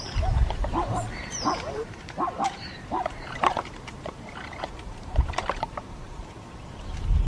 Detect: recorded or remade remade